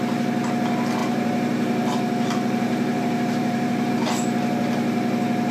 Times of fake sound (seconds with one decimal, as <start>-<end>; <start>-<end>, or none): 1.0-3.9